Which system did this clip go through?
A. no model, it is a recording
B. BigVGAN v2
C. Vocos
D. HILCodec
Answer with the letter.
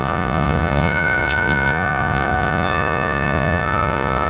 C